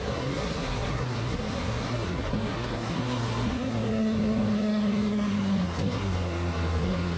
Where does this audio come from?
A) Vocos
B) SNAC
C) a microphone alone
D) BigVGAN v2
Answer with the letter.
B